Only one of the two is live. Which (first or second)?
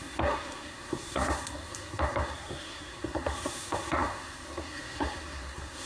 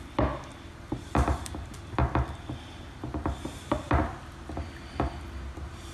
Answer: second